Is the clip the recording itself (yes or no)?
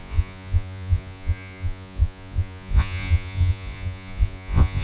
no